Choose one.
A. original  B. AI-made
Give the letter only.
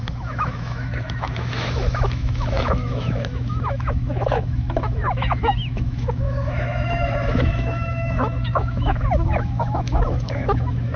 B